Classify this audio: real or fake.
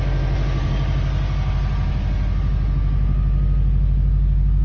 real